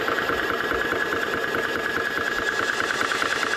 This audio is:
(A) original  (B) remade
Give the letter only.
A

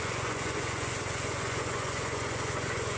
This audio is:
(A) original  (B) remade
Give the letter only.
B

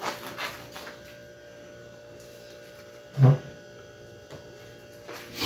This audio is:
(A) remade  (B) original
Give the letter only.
B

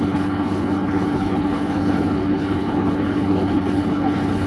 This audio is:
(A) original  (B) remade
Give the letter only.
B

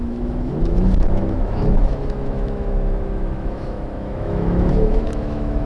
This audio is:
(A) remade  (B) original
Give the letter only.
A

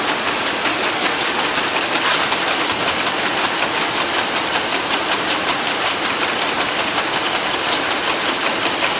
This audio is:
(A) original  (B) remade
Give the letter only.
A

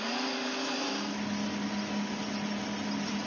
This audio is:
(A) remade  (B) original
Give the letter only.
B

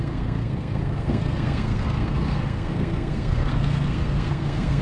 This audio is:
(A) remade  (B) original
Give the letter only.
A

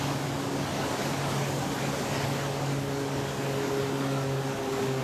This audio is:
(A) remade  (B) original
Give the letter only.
A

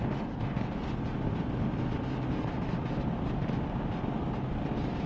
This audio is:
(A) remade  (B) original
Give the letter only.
B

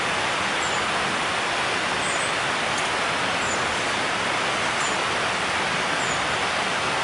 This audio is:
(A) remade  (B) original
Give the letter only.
B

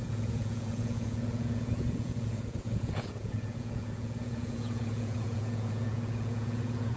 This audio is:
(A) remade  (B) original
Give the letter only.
A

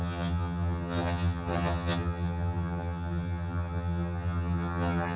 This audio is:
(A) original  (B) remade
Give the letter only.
B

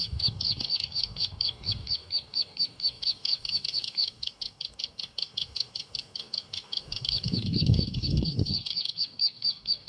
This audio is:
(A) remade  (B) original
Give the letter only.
A